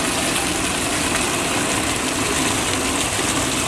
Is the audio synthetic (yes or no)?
no